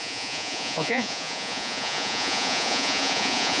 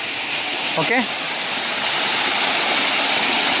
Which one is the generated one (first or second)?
first